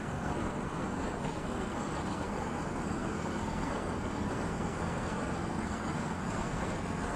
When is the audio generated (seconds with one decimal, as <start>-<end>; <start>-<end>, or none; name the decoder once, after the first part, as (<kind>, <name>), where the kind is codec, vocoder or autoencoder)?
0.0-7.2 (codec, SNAC)